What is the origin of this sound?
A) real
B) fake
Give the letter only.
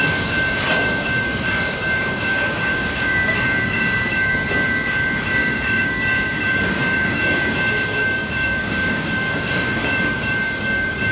B